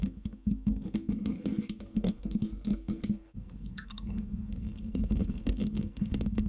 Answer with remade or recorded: remade